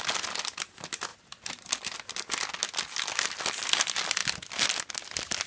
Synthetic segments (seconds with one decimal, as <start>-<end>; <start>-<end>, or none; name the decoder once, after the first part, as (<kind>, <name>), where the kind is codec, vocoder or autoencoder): none